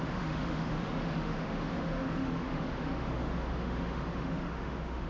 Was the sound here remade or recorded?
remade